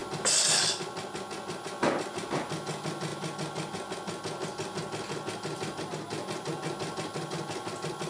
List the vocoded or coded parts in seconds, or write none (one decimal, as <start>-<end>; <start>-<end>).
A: none